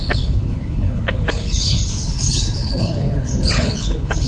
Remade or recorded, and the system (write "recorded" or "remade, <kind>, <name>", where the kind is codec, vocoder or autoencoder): remade, codec, HILCodec